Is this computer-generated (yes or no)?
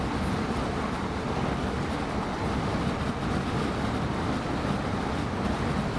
no